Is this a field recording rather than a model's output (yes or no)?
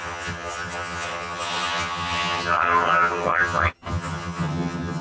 no